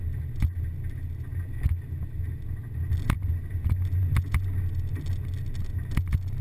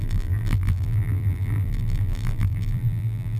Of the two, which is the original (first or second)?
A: first